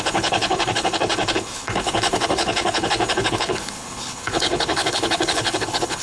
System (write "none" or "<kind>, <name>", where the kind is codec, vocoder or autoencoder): codec, HILCodec